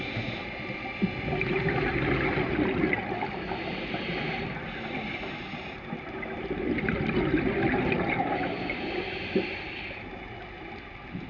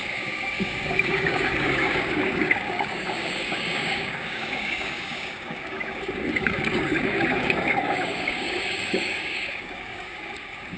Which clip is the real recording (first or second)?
first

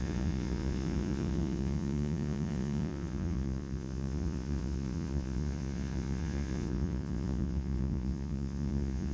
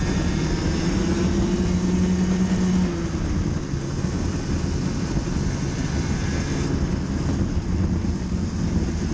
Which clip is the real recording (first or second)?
second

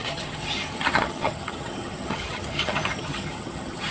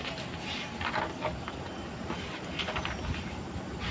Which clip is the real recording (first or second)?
second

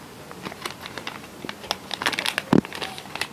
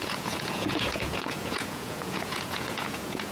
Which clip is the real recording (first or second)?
first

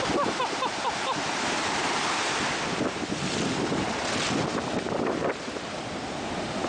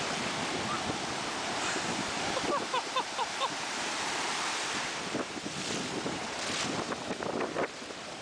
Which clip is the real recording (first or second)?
first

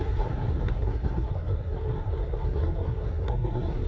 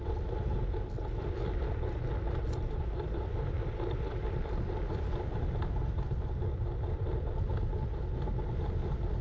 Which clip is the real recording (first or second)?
second